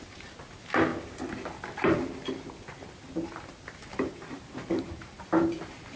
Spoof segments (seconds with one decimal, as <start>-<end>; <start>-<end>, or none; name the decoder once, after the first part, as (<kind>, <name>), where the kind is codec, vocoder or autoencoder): 3.9-5.2 (vocoder, BigVGAN v2)